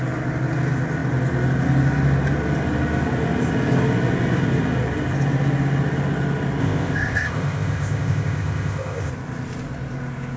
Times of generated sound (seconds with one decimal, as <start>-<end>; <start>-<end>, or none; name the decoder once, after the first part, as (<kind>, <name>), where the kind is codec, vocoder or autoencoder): 6.6-9.1 (codec, ZipCodec)